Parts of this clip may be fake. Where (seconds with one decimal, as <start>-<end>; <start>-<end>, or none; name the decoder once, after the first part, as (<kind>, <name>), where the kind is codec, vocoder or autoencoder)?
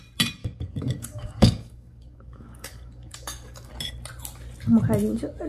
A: 0.4-3.7 (codec, DAC)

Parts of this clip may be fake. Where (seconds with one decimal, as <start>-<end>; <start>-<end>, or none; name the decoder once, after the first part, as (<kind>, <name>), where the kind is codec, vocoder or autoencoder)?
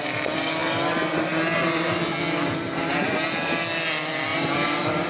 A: 4.3-5.1 (vocoder, BigVGAN v2)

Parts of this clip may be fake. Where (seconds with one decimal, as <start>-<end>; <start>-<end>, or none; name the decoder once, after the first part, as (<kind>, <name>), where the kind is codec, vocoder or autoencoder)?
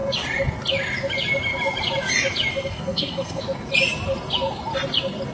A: 2.5-3.4 (codec, SNAC)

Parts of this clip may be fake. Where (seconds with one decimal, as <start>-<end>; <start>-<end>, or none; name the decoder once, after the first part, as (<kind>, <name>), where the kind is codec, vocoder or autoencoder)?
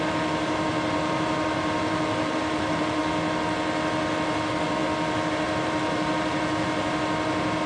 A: 0.0-3.0 (vocoder, BigVGAN v2); 4.3-4.8; 5.3-7.7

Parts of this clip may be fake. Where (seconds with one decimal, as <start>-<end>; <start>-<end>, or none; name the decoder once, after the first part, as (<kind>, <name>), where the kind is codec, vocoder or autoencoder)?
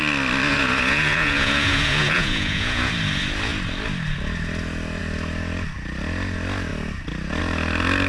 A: 0.5-2.9 (vocoder, Vocos)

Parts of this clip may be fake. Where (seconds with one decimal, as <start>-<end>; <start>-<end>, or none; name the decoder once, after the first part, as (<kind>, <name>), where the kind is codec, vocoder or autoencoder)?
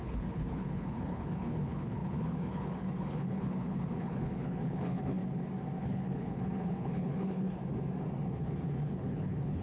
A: 0.0-5.2 (codec, HILCodec); 5.8-7.6; 8.4-9.6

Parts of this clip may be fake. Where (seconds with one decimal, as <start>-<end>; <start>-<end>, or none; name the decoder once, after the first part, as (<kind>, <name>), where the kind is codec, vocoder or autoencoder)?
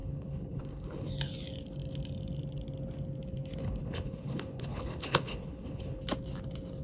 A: 0.0-1.1 (codec, HILCodec); 3.6-6.0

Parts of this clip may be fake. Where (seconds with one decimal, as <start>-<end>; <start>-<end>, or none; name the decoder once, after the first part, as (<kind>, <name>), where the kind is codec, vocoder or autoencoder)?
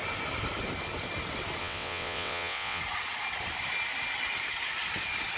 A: 1.6-2.8 (vocoder, WaveNeXt)